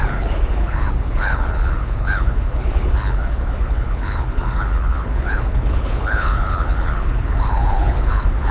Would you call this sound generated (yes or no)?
yes